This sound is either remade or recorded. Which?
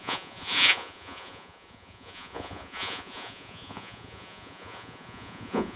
remade